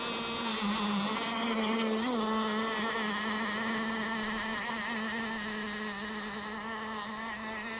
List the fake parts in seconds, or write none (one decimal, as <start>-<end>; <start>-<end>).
none